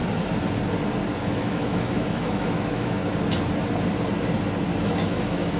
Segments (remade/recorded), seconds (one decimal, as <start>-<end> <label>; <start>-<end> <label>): 0.0-1.2 recorded; 1.2-3.0 remade; 3.0-4.8 recorded; 4.8-5.6 remade